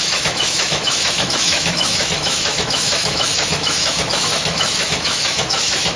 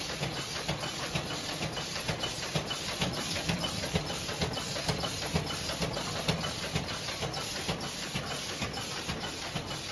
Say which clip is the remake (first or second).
first